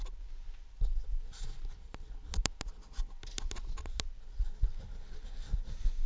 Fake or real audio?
real